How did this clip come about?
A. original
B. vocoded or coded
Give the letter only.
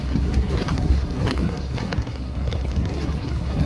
B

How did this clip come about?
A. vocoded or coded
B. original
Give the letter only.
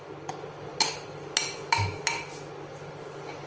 B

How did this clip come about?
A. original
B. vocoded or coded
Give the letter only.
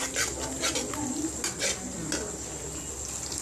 A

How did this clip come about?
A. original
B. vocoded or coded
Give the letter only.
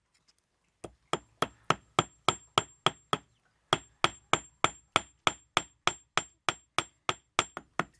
A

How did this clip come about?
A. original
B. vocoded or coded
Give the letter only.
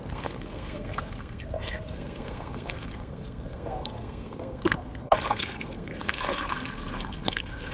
B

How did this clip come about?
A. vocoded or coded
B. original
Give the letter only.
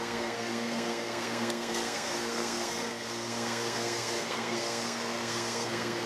A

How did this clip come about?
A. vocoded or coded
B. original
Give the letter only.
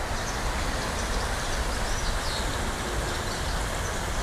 B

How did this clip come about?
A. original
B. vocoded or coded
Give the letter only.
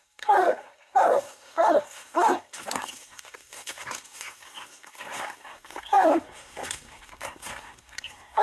B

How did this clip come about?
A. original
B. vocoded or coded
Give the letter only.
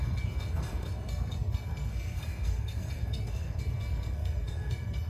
B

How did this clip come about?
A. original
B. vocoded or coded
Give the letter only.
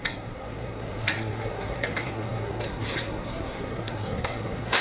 B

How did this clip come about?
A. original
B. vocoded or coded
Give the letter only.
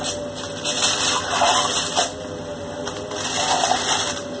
A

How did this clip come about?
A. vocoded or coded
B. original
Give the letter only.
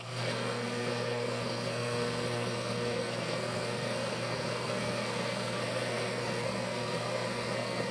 A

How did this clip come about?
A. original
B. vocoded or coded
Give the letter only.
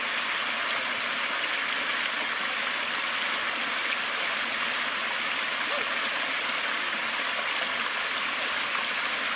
A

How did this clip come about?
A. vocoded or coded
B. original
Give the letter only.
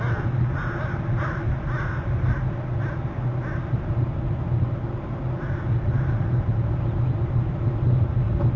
B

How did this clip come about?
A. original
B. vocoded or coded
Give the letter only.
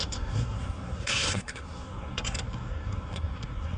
B